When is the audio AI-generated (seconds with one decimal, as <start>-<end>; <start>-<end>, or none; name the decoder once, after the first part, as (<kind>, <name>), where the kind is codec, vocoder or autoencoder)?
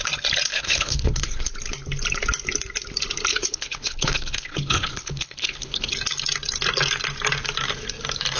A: 0.5-1.5 (codec, HILCodec); 3.3-5.9